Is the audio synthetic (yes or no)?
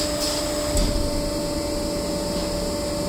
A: no